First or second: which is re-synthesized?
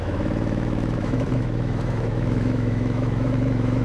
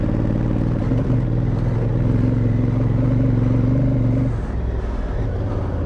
first